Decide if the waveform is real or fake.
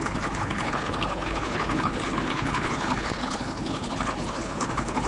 fake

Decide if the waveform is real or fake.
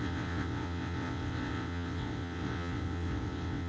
fake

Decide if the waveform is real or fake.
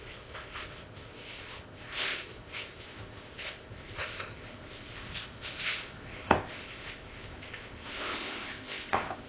fake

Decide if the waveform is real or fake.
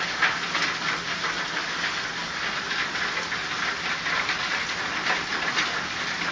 real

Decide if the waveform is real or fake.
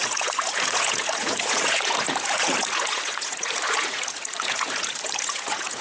fake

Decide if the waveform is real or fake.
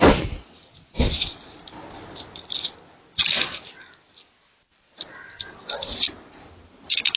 real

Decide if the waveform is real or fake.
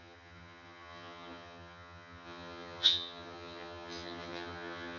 fake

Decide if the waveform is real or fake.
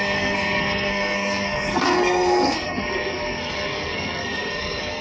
fake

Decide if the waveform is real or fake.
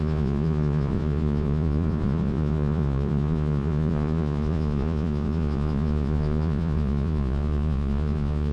fake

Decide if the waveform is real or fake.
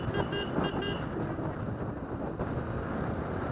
real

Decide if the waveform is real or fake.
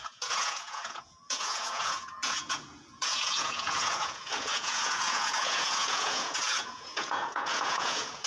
fake